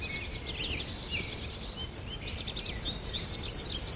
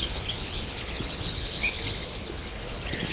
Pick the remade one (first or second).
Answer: second